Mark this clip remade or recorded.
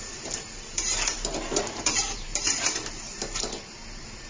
remade